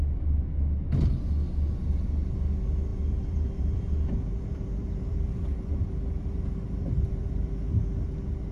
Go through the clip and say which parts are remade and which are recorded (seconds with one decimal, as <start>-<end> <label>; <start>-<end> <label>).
0.0-2.9 recorded; 2.9-7.7 remade; 7.7-8.5 recorded